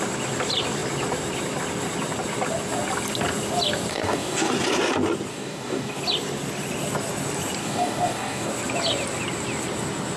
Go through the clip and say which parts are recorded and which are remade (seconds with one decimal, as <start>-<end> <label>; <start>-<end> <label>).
0.0-3.9 recorded; 3.9-4.5 remade; 4.5-5.3 recorded; 5.3-6.0 remade; 6.0-7.6 recorded; 7.6-8.5 remade; 8.5-10.2 recorded